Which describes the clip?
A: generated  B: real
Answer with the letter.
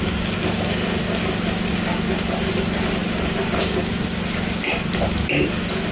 B